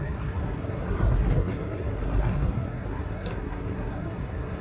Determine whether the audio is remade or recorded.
remade